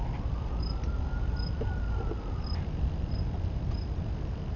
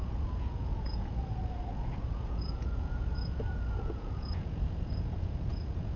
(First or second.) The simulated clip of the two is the second